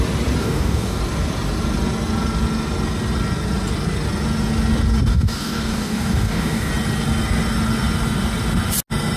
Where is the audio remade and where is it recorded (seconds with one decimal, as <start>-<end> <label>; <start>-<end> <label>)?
0.0-0.4 recorded; 0.4-1.0 remade; 1.0-5.1 recorded; 5.1-6.7 remade; 6.7-9.2 recorded